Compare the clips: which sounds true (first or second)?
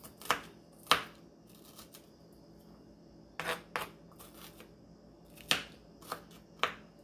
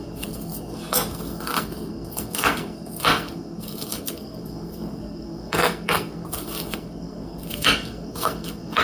first